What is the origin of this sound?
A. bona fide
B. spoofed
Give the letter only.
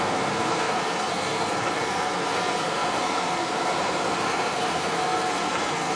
B